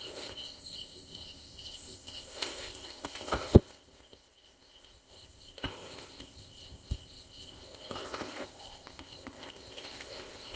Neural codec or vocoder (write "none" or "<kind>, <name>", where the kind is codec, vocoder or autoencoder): codec, ZipCodec